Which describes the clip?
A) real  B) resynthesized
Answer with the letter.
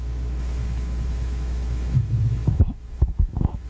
B